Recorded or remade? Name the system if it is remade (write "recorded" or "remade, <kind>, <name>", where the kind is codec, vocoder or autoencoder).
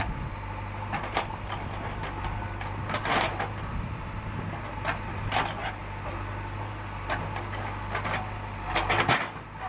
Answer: recorded